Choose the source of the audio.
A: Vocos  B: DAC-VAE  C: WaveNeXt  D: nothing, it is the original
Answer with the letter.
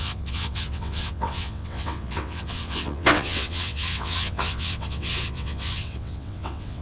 C